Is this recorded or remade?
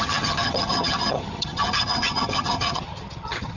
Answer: remade